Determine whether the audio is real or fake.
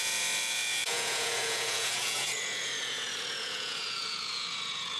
fake